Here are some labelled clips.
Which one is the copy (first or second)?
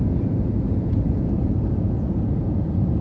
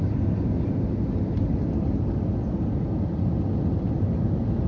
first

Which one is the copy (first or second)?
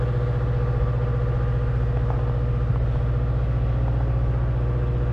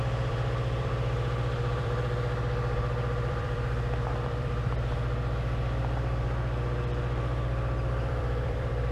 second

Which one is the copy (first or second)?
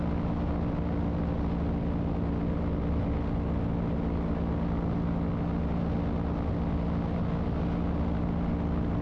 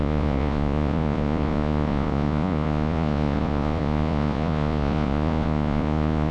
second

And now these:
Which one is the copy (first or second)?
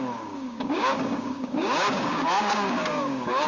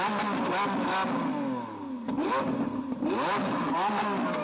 first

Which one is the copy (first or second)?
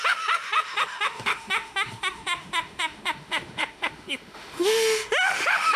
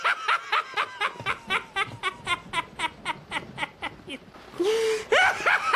first